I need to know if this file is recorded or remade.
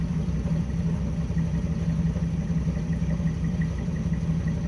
recorded